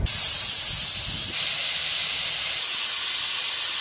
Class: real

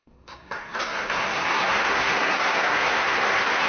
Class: fake